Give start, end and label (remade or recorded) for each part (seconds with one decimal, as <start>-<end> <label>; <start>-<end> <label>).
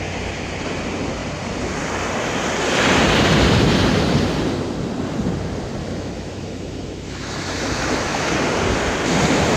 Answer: 0.0-5.8 recorded; 5.8-8.3 remade; 8.3-9.6 recorded